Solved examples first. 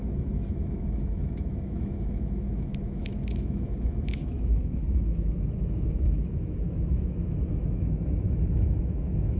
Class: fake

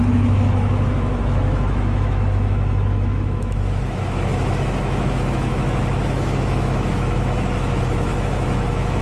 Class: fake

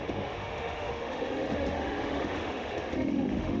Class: fake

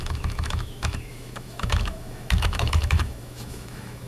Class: fake